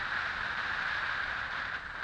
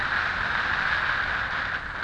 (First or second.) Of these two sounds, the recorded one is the second